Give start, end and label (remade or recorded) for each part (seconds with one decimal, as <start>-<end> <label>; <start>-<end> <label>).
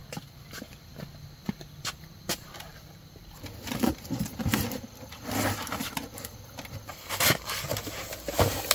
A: 0.0-0.9 remade; 0.9-1.7 recorded; 1.7-8.7 remade